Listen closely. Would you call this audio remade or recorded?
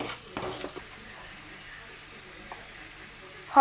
recorded